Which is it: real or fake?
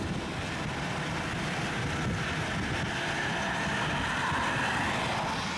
real